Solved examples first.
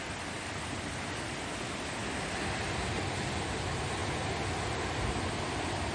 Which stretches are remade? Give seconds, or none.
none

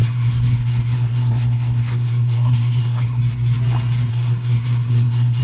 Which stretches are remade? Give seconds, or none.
0.0-3.2 (codec, SNAC); 4.1-5.4